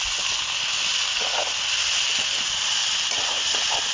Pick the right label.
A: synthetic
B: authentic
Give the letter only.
B